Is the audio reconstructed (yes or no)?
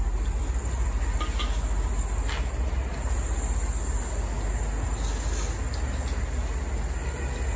no